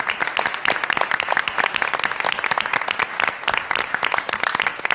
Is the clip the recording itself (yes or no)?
yes